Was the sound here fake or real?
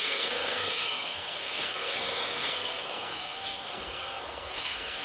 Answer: fake